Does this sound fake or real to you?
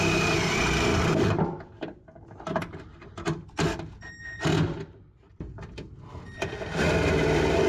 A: real